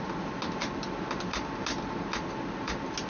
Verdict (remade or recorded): recorded